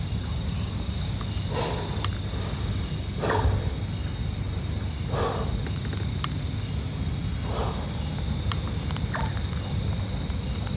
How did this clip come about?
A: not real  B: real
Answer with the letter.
B